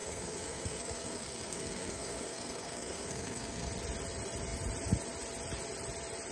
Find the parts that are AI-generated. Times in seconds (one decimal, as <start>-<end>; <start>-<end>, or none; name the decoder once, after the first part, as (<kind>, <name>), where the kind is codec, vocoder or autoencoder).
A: 0.0-3.7 (codec, SNAC)